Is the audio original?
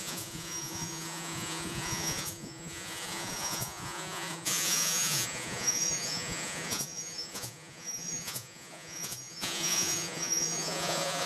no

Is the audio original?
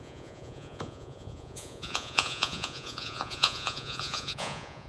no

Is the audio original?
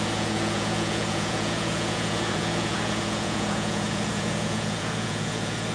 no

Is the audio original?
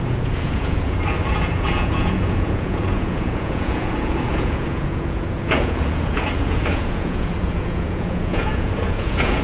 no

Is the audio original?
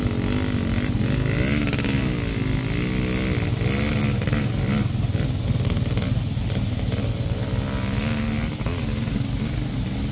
yes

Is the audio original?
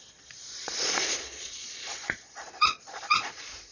no